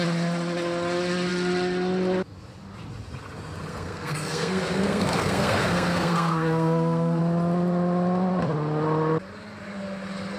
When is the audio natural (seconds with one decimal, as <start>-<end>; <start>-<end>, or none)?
0.0-3.7; 7.2-10.4